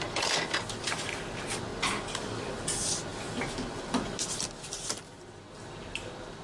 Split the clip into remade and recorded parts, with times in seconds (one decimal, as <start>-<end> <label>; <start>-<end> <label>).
0.0-6.4 recorded